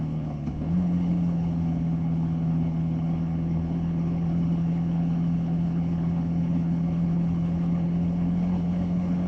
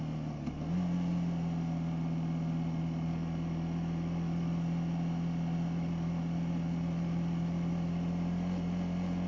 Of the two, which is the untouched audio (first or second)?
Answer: second